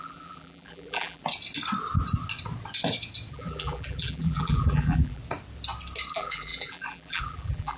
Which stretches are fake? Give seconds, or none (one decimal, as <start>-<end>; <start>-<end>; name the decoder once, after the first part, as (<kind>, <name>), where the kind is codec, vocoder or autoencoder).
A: 0.0-1.2 (vocoder, BigVGAN v2); 3.3-5.2; 6.1-7.8